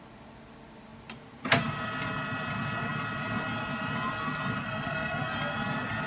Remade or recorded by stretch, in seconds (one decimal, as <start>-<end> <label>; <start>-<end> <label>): 0.0-4.6 recorded; 4.6-5.3 remade; 5.3-6.1 recorded